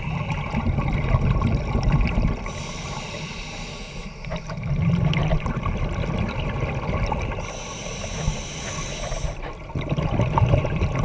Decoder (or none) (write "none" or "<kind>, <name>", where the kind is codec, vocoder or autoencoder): none